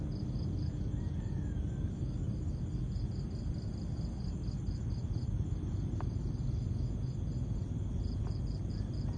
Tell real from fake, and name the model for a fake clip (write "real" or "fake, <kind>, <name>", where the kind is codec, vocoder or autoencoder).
real